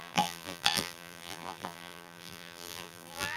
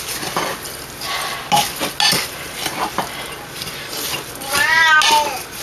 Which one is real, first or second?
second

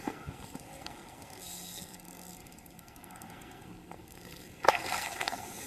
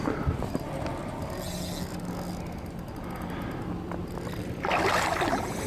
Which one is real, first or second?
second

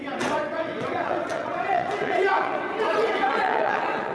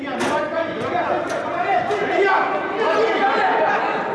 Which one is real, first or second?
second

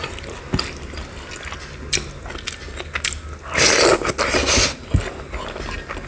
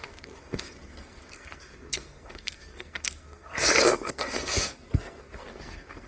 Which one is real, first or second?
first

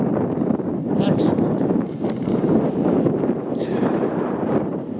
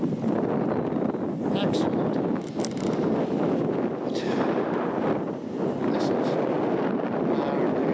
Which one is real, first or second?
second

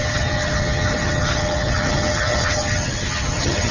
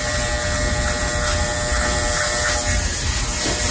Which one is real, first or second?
second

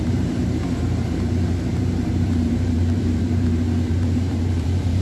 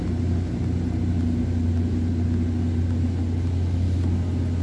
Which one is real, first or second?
second